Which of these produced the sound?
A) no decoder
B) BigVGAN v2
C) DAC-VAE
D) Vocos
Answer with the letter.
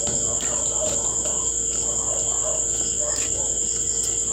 A